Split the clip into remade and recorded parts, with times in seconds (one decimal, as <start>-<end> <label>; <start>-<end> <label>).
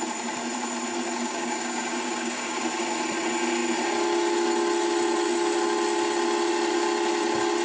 0.0-1.2 recorded; 1.2-2.6 remade; 2.6-7.6 recorded